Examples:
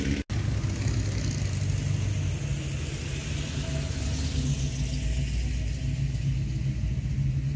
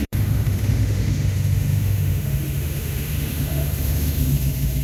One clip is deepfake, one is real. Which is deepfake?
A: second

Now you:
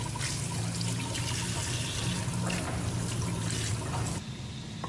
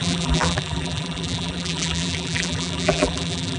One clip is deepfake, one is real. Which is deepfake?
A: second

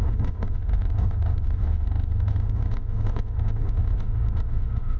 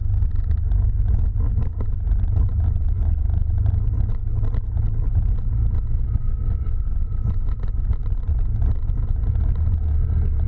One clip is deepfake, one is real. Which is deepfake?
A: first